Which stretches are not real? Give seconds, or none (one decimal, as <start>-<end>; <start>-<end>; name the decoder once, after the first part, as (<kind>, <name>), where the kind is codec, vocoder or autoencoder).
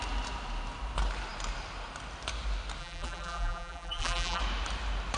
2.8-4.4 (vocoder, BigVGAN v2)